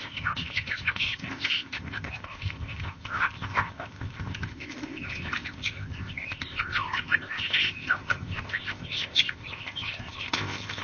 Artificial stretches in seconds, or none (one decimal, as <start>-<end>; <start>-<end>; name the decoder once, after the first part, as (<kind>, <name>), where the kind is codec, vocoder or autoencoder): 0.0-10.8 (codec, ZipCodec)